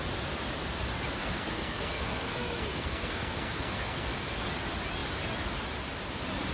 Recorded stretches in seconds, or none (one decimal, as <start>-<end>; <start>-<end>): 0.0-1.2; 4.5-6.5